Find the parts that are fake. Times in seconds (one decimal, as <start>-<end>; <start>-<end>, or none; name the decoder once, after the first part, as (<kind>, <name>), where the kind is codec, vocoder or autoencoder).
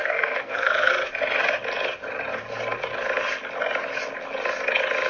0.0-0.9 (codec, SNAC)